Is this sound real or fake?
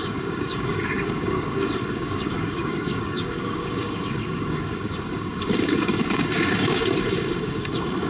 fake